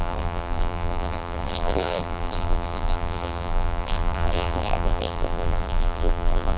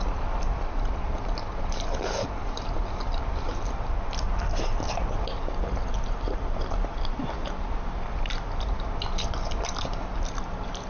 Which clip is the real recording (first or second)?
second